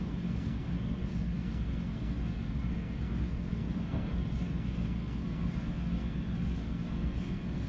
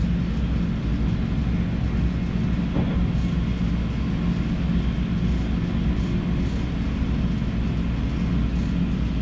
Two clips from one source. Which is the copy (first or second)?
first